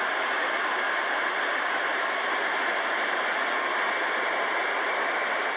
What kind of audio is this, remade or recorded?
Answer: recorded